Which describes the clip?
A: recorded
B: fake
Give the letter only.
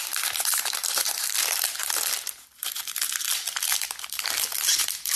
A